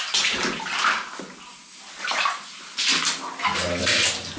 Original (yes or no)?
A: yes